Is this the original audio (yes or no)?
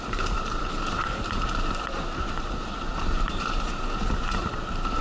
no